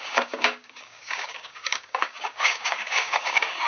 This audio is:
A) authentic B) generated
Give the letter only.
B